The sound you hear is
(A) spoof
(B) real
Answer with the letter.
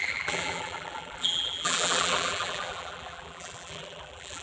A